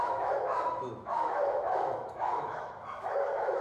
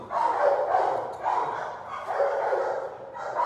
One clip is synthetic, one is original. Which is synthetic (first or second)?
first